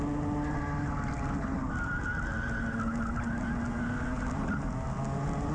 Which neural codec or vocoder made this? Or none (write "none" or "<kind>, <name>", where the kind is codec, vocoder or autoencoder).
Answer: none